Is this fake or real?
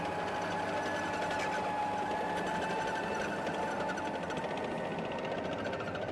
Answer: real